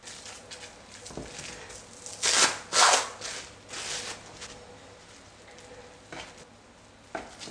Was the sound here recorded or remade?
recorded